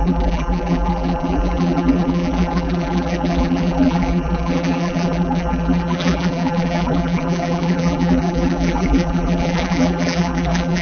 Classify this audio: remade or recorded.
remade